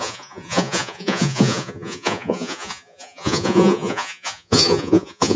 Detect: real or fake fake